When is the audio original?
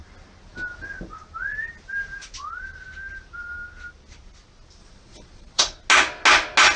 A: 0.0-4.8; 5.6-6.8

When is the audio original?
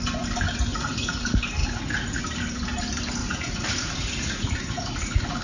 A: 0.0-0.7; 1.2-1.6; 2.2-3.2